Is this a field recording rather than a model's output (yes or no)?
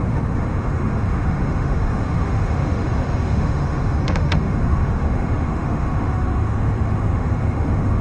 no